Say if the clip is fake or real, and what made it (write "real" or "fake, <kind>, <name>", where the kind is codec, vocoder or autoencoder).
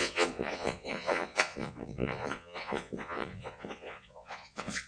fake, vocoder, Vocos